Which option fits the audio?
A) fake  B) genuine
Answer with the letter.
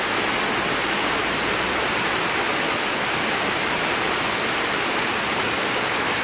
B